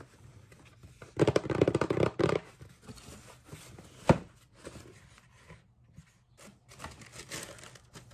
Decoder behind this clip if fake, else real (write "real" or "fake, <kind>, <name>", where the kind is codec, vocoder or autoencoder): real